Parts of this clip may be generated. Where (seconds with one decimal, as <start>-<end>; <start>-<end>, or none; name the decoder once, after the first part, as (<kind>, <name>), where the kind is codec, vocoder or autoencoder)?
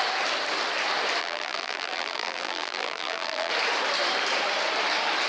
1.2-3.5 (vocoder, BigVGAN v2)